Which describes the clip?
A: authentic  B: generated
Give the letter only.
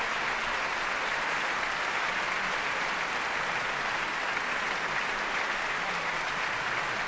A